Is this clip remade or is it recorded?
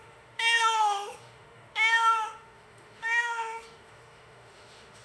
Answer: remade